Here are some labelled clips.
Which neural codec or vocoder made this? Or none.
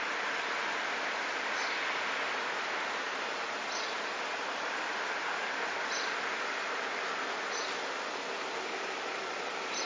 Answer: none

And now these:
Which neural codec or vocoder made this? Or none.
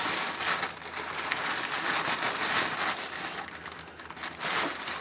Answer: none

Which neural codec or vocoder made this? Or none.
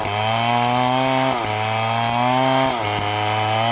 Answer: none